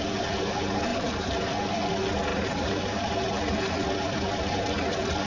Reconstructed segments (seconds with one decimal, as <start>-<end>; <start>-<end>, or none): 0.9-1.6; 2.3-3.1